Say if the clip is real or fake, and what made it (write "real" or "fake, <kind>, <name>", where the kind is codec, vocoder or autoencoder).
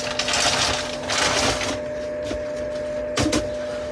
real